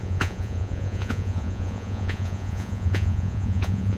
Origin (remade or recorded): remade